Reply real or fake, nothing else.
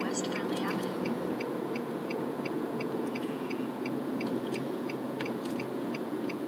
fake